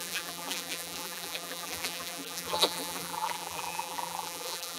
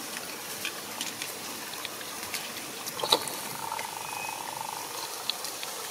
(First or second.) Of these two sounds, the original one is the second